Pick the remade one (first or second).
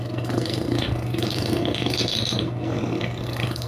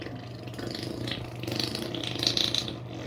first